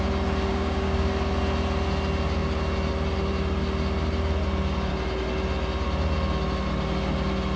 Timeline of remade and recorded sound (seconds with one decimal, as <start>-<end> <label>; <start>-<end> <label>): 0.0-0.5 recorded; 0.5-1.1 remade; 1.1-7.6 recorded